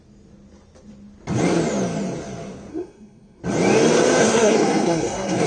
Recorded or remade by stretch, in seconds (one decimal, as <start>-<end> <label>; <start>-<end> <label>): 0.0-2.7 recorded; 2.7-3.4 remade; 3.4-4.2 recorded; 4.2-5.5 remade